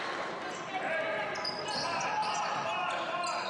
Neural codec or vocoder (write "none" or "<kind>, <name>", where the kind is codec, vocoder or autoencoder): none